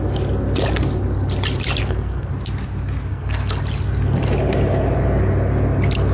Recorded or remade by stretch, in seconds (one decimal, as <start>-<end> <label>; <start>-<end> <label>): 0.0-1.8 recorded; 1.8-2.3 remade; 2.3-3.1 recorded; 3.1-3.6 remade; 3.6-6.1 recorded